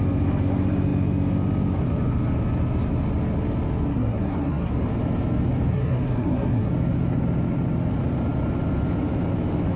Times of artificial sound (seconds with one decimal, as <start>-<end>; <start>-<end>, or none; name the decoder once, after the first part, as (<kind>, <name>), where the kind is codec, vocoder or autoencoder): 3.9-4.7 (codec, SNAC); 5.7-6.7